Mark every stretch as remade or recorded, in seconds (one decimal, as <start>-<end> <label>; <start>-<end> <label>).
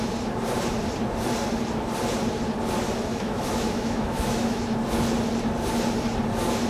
0.0-3.1 recorded; 3.1-4.6 remade; 4.6-6.7 recorded